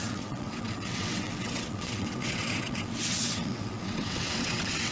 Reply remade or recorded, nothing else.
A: remade